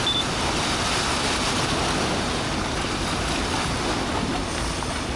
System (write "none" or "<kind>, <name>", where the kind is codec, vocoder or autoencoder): none